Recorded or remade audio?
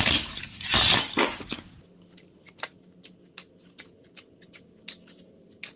recorded